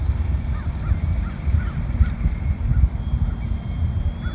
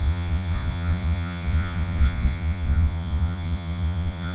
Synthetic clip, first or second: second